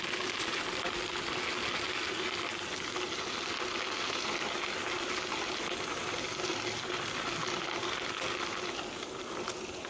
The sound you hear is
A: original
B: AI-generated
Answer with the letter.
A